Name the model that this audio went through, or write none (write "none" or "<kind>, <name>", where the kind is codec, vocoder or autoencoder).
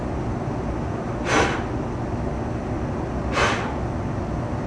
none